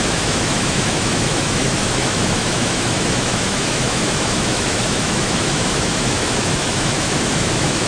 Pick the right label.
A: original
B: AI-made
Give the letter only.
B